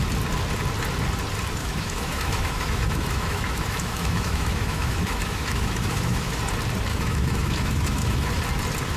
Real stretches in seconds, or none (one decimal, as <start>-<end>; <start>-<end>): 0.0-1.6; 6.4-6.9; 8.4-9.0